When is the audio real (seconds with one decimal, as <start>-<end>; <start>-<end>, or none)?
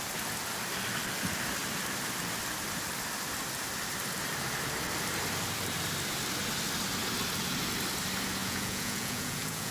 0.0-8.4